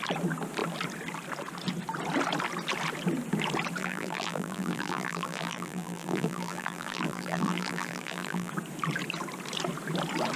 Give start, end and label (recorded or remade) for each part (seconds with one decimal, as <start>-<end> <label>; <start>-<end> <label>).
0.0-3.8 recorded; 3.8-8.5 remade; 8.5-10.4 recorded

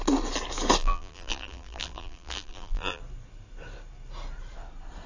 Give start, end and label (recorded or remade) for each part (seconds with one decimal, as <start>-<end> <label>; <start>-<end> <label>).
0.0-0.8 recorded; 0.8-3.0 remade; 3.0-5.1 recorded